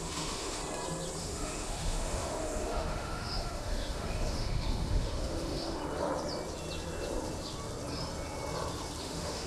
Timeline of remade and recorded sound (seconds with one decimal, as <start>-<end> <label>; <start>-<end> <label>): 0.0-0.6 remade; 0.6-1.2 recorded; 1.2-5.8 remade; 5.8-9.0 recorded; 9.0-9.5 remade